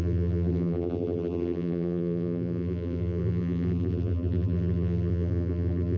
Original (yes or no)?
no